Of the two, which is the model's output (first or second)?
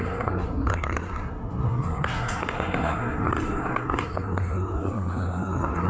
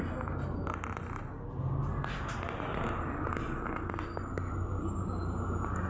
first